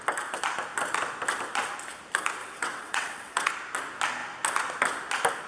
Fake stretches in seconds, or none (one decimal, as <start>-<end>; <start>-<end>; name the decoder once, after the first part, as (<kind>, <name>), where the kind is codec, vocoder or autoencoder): 2.4-3.5 (vocoder, WaveNeXt)

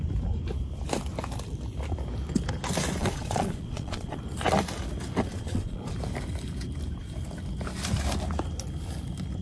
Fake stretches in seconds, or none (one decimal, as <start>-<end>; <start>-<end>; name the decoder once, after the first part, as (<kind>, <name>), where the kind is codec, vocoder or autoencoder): 3.0-4.2 (vocoder, Vocos); 5.3-5.9

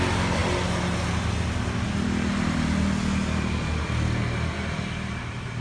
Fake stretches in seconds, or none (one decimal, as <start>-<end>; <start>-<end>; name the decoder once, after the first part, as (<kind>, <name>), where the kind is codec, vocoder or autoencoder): none

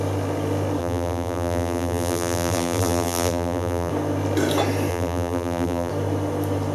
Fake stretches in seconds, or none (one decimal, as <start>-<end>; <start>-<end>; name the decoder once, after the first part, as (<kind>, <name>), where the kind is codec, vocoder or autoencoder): 0.8-3.9 (vocoder, BigVGAN v2); 4.9-5.9